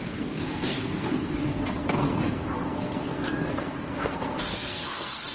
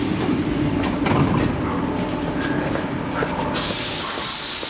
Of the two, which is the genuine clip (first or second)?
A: second